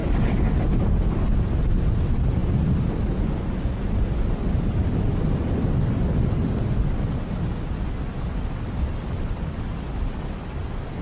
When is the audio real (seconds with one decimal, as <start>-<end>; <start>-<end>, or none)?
0.0-11.0